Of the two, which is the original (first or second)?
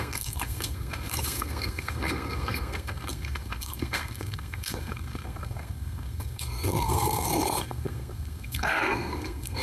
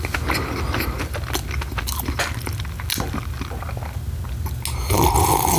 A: second